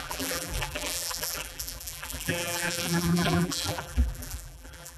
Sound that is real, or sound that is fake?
fake